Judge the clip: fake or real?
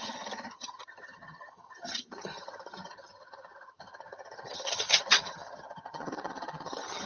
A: fake